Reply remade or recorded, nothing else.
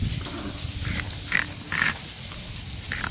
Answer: recorded